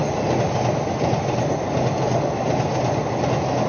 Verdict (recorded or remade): recorded